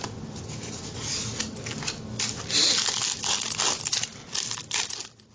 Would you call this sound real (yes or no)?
yes